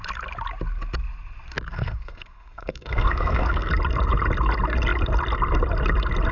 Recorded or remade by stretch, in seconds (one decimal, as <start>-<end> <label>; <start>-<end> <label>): 0.0-1.7 recorded; 1.7-3.7 remade; 3.7-6.3 recorded